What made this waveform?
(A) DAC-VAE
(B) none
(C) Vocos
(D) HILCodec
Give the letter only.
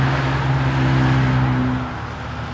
B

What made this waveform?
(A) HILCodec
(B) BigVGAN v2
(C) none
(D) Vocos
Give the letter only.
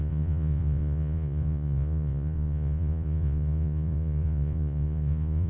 D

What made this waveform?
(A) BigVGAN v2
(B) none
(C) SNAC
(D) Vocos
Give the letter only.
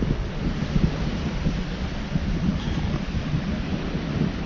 B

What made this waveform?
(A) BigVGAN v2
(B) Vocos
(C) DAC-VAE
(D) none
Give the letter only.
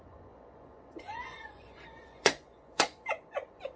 B